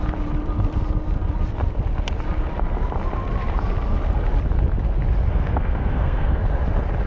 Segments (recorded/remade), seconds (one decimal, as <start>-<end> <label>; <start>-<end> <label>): 0.0-5.3 recorded; 5.3-6.4 remade; 6.4-7.1 recorded